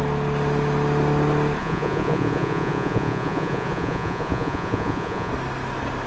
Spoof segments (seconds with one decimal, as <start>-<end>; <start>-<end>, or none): 1.6-5.3

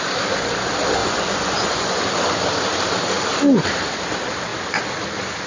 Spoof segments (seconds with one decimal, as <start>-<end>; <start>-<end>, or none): 1.0-2.0

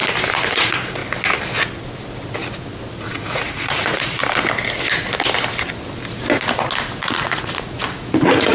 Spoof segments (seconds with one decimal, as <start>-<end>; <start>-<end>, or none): 0.5-1.0; 2.9-4.2; 7.1-8.5

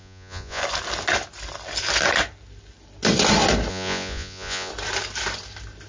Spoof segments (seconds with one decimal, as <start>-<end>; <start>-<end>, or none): 0.0-0.6; 3.7-4.7

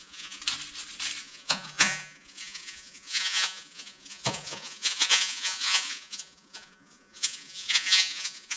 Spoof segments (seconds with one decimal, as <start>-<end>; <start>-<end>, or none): 0.0-0.4; 1.2-8.6